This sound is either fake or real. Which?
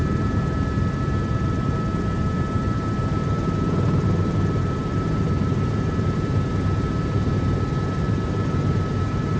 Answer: fake